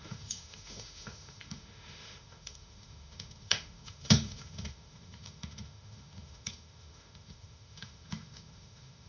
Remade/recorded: remade